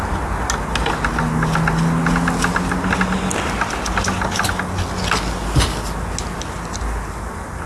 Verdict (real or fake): real